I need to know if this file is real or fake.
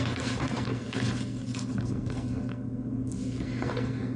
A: fake